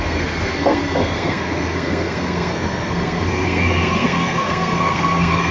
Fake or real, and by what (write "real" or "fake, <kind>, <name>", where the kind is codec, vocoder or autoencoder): fake, codec, SNAC